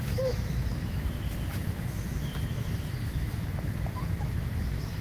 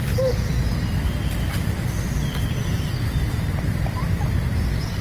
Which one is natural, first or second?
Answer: second